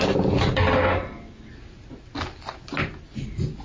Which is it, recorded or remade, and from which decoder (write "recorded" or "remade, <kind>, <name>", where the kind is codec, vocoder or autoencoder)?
recorded